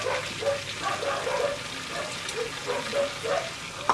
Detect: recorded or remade recorded